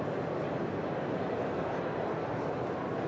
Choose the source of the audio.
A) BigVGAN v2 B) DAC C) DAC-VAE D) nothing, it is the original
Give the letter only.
D